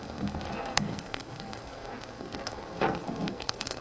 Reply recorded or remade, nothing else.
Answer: remade